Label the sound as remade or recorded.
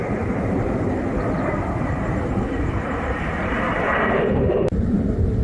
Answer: remade